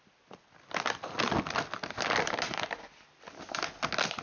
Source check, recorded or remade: recorded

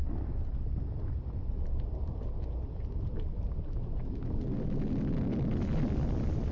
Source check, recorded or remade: recorded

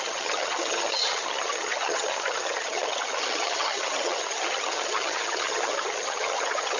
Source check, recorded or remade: remade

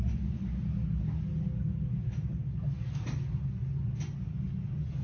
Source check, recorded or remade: recorded